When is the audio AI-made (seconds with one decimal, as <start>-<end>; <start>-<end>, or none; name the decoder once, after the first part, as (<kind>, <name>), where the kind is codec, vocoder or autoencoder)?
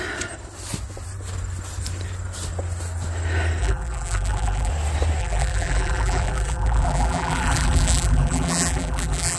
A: 3.6-4.7 (vocoder, BigVGAN v2); 5.2-9.4